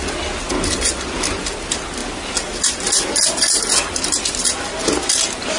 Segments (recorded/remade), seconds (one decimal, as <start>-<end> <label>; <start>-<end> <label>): 0.0-5.6 recorded